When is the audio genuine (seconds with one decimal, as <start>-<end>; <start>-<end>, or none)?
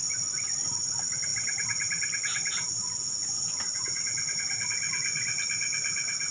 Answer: 0.0-6.3